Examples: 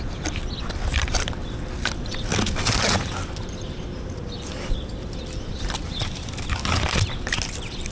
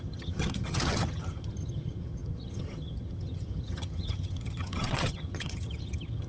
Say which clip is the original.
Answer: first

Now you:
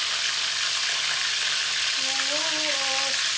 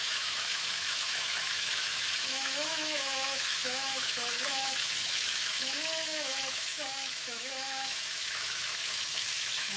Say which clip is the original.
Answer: first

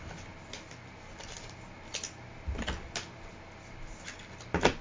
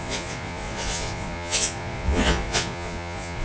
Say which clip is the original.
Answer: first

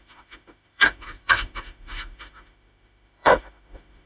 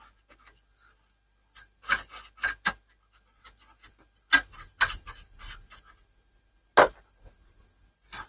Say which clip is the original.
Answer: second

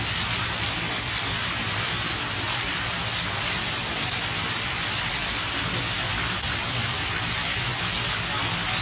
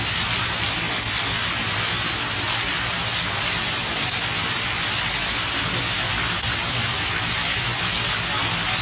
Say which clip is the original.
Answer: second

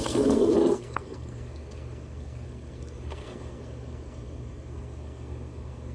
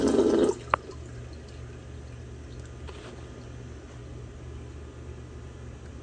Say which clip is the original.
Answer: second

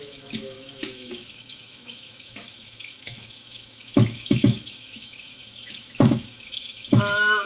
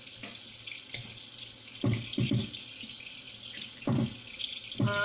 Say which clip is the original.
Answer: second